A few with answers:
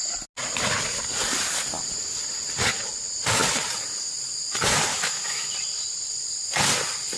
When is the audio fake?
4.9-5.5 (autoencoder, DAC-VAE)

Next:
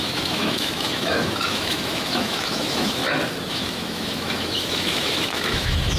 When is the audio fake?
0.0-3.0 (autoencoder, DAC-VAE); 3.5-6.0

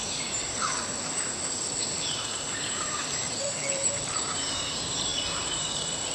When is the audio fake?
none

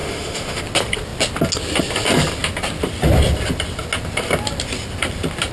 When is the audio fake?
0.0-0.6 (autoencoder, DAC-VAE)

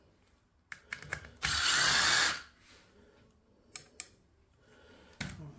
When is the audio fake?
none

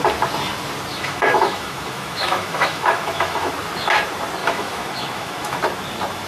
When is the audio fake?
0.9-3.5 (autoencoder, DAC-VAE); 4.4-5.6

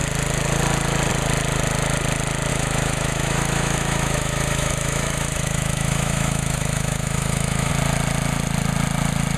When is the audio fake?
2.5-7.7 (autoencoder, DAC-VAE)